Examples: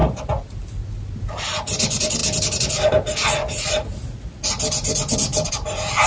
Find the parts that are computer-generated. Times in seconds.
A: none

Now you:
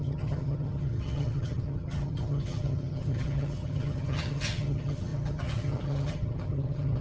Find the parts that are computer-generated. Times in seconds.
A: 0.0-7.0 (vocoder, HiFi-GAN)

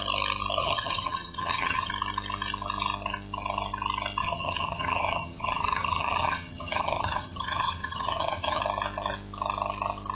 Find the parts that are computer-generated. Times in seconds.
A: 0.6-1.9 (vocoder, HiFi-GAN); 4.2-8.6

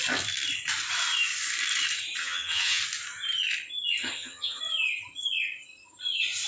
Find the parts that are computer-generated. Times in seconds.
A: 2.2-2.8 (vocoder, HiFi-GAN); 4.0-4.6

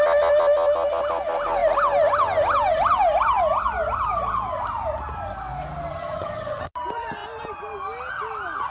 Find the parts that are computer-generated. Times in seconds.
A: 5.9-6.7 (vocoder, HiFi-GAN)

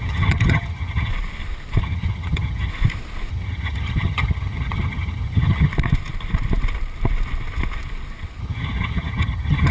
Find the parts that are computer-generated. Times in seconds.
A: 0.0-1.1 (vocoder, HiFi-GAN); 1.8-2.7; 3.3-5.7; 8.4-9.7

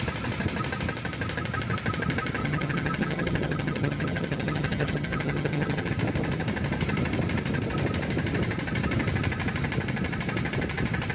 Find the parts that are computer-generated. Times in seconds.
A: 2.4-5.9 (vocoder, HiFi-GAN)